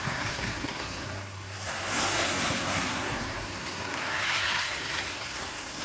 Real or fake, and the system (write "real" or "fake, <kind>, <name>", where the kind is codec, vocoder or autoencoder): fake, codec, SNAC